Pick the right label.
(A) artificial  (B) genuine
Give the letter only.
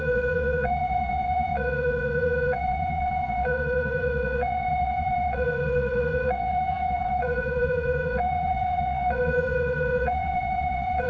A